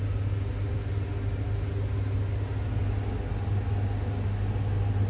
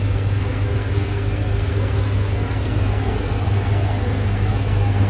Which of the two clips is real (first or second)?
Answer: first